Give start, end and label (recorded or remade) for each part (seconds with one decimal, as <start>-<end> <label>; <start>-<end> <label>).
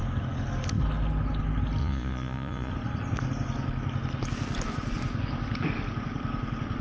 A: 0.0-1.8 recorded; 1.8-2.7 remade; 2.7-6.8 recorded